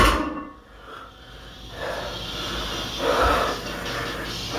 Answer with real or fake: real